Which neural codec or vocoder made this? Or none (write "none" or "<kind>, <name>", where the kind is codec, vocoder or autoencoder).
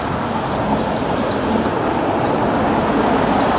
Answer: none